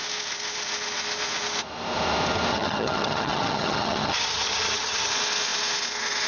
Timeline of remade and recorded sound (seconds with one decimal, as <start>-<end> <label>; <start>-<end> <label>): 0.0-2.5 recorded; 2.5-5.1 remade; 5.1-6.3 recorded